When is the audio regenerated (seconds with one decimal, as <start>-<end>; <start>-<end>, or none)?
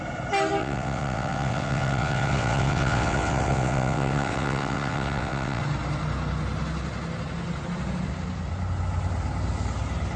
0.6-5.6